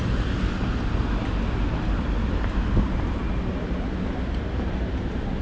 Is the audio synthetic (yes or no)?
no